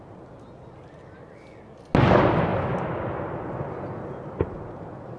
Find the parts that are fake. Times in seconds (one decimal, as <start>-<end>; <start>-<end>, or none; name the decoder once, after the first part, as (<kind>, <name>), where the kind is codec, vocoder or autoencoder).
none